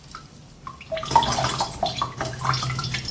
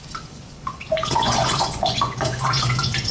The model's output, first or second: second